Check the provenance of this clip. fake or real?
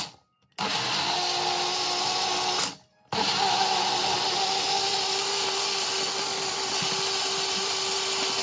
real